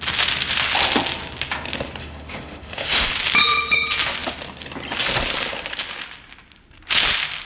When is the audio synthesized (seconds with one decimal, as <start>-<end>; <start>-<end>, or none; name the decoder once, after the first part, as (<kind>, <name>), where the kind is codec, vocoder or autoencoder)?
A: 2.0-3.1 (autoencoder, DAC-VAE)